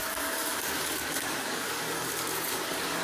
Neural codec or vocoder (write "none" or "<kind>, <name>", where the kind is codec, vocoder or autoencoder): codec, DAC